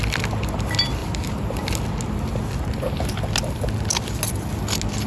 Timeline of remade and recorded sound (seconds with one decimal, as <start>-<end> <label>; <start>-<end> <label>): 0.0-5.1 recorded